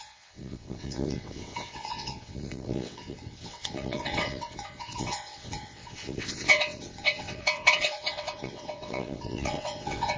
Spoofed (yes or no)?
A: yes